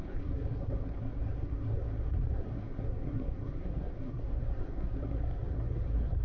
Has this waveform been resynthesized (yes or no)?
yes